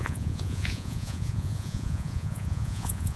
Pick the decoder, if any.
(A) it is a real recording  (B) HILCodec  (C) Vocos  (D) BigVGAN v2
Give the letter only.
C